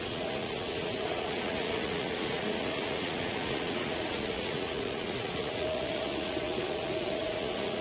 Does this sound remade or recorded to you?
remade